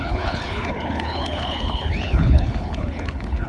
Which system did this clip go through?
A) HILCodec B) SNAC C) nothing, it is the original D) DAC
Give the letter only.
A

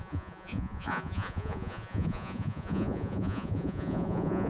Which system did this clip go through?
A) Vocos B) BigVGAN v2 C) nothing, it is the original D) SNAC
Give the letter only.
A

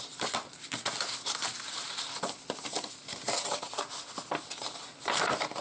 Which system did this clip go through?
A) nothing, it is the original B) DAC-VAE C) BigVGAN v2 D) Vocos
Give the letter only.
A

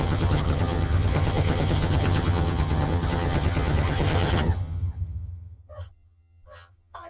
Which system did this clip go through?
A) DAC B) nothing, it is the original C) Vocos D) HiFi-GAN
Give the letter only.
D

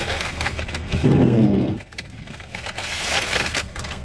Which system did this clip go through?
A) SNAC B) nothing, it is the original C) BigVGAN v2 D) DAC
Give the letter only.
A